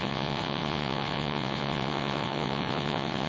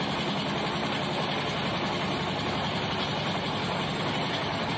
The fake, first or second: first